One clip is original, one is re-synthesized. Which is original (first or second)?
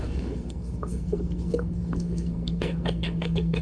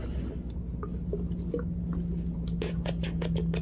second